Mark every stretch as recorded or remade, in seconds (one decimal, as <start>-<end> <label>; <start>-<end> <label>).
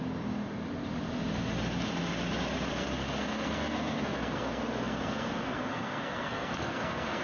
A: 0.0-2.7 recorded; 2.7-7.2 remade